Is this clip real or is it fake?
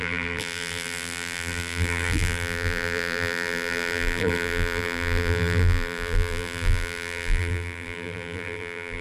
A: fake